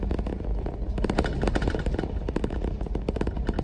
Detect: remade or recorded recorded